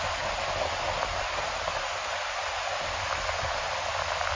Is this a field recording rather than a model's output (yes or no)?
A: yes